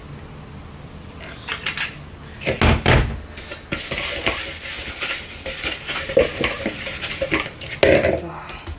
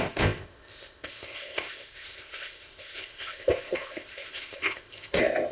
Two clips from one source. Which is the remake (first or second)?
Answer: second